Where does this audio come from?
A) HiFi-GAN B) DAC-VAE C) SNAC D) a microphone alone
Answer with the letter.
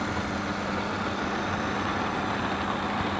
D